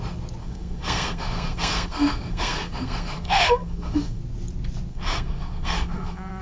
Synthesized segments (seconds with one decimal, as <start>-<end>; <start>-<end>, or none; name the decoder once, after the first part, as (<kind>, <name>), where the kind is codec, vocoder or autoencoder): 0.4-4.2 (codec, SNAC); 4.9-6.4